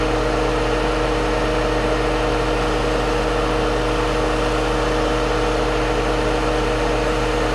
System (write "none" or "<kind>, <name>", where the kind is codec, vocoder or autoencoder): none